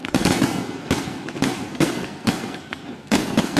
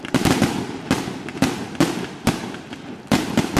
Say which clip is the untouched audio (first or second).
second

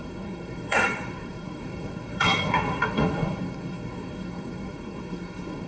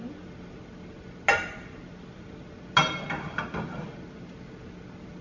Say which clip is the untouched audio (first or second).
second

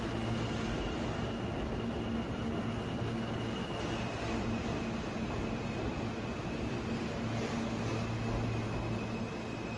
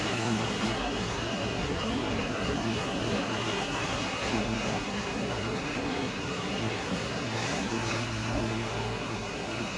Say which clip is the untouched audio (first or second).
first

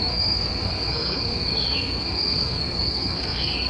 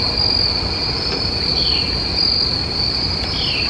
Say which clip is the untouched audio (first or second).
second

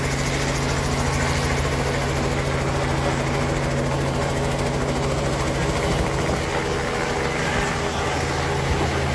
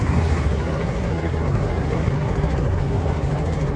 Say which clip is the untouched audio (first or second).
first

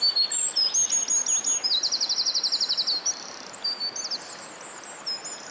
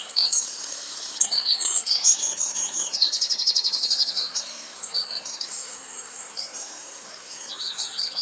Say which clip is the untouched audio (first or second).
first